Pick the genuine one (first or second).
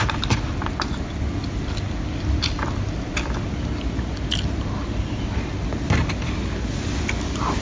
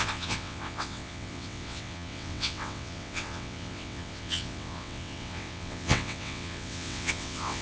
first